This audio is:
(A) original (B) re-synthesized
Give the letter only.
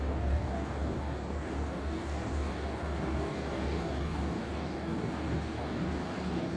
B